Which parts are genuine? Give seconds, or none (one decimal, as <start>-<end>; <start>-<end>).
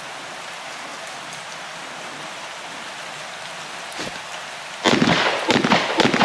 0.0-6.2